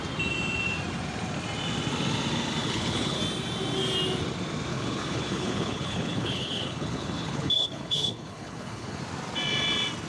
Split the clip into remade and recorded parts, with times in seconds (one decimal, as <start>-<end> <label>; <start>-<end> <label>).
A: 0.0-2.6 recorded; 2.6-3.2 remade; 3.2-4.7 recorded; 4.7-9.0 remade; 9.0-10.1 recorded

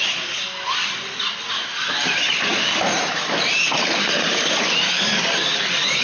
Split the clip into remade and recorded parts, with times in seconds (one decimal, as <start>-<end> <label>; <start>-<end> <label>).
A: 0.0-6.0 recorded

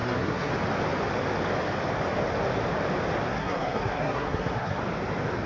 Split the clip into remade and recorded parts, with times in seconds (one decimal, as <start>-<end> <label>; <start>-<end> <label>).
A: 0.0-0.5 remade; 0.5-3.3 recorded; 3.3-4.8 remade; 4.8-5.5 recorded

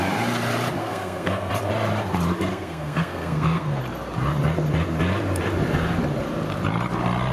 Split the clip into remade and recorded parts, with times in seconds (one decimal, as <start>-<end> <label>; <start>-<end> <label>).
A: 0.0-0.8 recorded; 0.8-1.5 remade; 1.5-2.5 recorded; 2.5-3.8 remade; 3.8-7.3 recorded